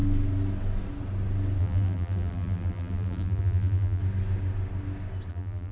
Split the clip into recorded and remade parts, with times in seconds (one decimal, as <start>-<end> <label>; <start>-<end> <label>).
0.0-1.6 recorded; 1.6-4.0 remade; 4.0-5.3 recorded; 5.3-5.7 remade